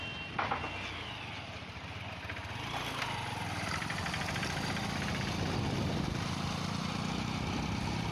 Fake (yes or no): no